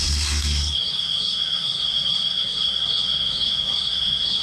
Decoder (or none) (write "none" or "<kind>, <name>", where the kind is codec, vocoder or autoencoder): codec, SNAC